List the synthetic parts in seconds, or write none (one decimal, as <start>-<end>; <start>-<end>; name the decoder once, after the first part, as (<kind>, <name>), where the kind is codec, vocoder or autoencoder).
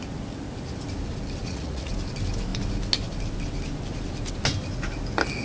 1.4-1.9 (vocoder, Vocos)